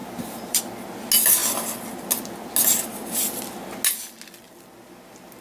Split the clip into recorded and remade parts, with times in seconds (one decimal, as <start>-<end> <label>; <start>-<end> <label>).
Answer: 0.0-0.6 remade; 0.6-5.4 recorded